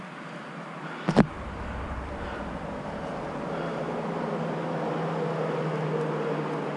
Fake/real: real